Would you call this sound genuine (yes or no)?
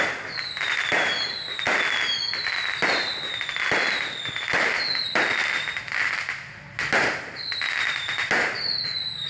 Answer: yes